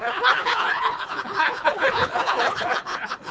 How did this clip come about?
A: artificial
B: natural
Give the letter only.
A